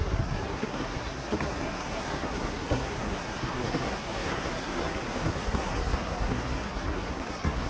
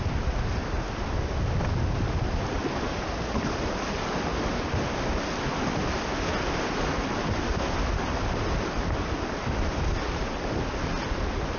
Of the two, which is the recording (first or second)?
second